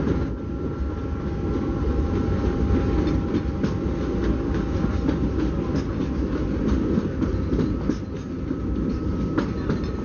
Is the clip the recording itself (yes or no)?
yes